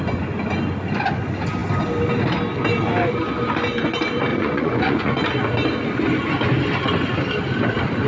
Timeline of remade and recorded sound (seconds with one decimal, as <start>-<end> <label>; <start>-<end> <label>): 0.0-4.3 recorded; 4.3-5.1 remade; 5.1-8.1 recorded